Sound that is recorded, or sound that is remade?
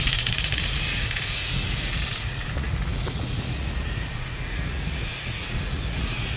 remade